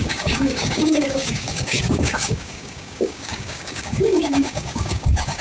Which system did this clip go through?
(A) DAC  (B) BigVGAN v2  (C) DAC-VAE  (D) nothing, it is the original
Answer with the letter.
A